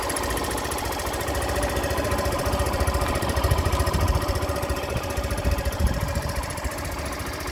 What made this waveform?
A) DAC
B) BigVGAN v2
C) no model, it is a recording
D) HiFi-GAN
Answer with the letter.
B